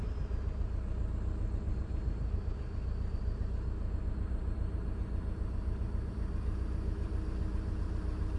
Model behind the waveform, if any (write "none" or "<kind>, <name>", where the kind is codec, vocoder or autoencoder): vocoder, BigVGAN v2